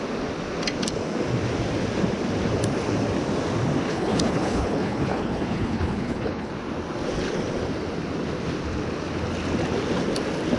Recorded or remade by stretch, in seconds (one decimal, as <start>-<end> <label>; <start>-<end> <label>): 0.0-3.9 recorded; 3.9-6.5 remade; 6.5-10.6 recorded